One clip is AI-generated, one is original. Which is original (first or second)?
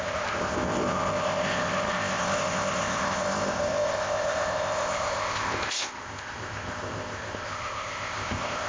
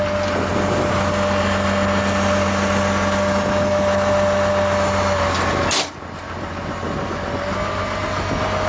second